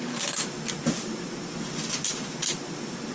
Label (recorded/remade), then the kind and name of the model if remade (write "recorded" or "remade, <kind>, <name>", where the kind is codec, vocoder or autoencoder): recorded